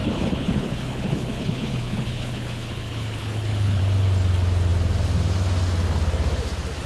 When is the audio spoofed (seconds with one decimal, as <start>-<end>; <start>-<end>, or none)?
0.0-3.8